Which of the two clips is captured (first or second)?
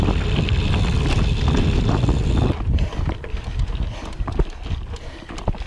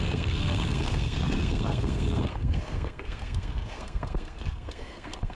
first